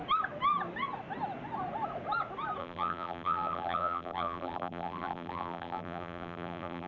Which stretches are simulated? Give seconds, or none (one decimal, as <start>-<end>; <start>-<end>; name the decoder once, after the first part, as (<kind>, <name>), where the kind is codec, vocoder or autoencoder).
2.6-6.9 (vocoder, BigVGAN v2)